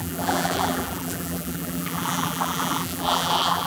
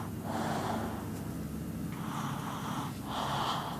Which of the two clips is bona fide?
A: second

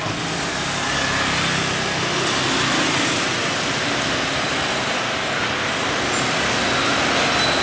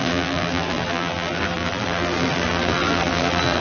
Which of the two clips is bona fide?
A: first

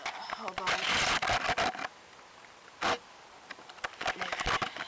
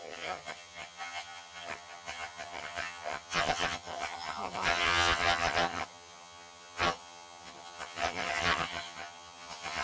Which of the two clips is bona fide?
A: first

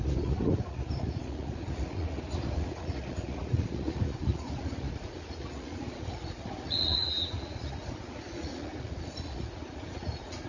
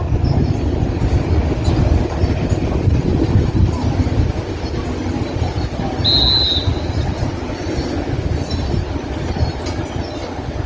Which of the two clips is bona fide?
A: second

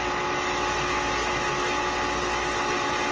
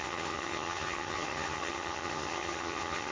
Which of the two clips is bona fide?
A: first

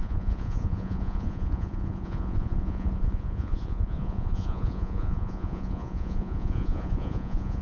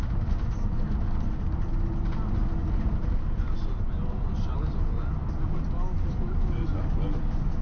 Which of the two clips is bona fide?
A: second